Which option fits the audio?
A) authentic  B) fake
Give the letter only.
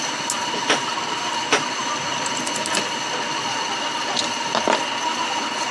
A